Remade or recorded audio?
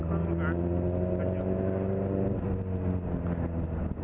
recorded